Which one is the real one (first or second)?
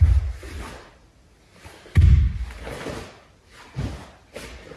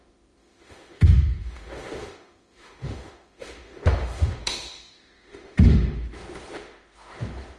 first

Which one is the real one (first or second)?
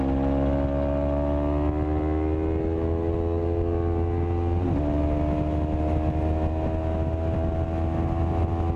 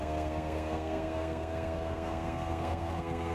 first